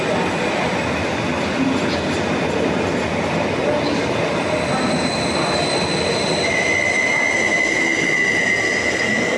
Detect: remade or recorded recorded